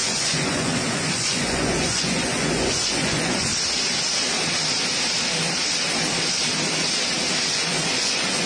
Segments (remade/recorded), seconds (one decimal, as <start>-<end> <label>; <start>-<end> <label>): 0.0-3.5 remade; 3.5-7.5 recorded; 7.5-8.5 remade

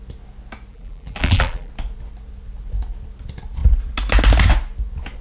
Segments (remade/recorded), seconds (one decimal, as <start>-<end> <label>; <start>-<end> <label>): 0.0-0.7 recorded; 0.7-1.7 remade; 1.7-5.2 recorded

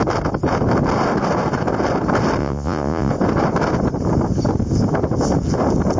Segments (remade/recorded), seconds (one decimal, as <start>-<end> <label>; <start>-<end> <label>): 0.0-2.4 recorded; 2.4-3.1 remade; 3.1-6.0 recorded

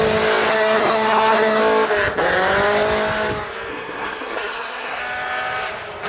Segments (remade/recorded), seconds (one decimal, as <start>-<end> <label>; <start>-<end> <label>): 0.0-0.5 recorded; 0.5-1.6 remade; 1.6-3.7 recorded; 3.7-5.0 remade; 5.0-6.1 recorded

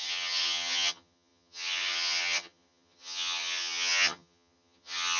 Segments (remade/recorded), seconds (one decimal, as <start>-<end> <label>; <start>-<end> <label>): 0.0-5.2 remade

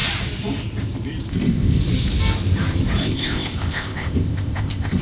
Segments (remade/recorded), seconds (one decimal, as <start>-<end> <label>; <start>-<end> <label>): 0.0-1.3 recorded; 1.3-1.8 remade; 1.8-3.0 recorded; 3.0-5.0 remade

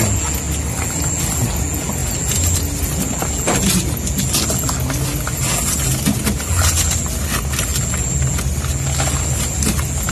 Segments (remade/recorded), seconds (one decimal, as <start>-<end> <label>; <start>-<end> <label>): 0.0-10.1 recorded

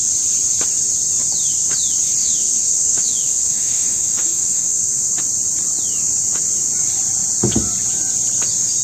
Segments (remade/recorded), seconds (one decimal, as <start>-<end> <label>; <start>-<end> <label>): 0.0-2.2 recorded; 2.2-5.1 remade; 5.1-8.8 recorded